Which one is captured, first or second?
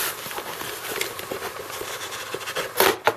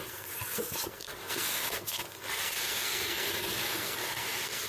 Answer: first